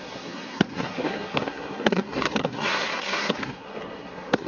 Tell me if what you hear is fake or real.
fake